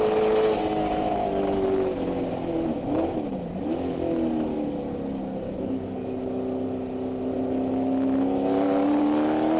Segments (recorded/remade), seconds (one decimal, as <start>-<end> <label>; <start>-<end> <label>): 0.0-9.6 recorded